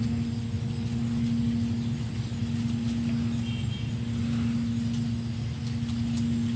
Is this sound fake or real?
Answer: real